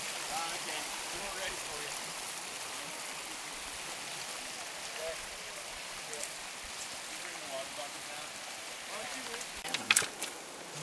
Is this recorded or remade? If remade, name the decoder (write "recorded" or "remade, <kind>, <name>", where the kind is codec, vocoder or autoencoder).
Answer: recorded